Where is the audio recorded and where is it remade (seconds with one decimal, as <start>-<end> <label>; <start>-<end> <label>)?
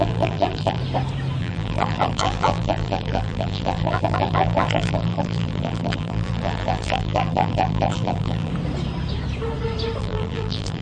0.0-0.8 remade; 0.8-1.4 recorded; 1.4-8.5 remade; 8.5-10.0 recorded; 10.0-10.8 remade